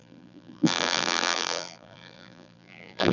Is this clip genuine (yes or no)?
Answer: no